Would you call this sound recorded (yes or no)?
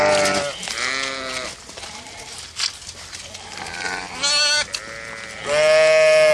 yes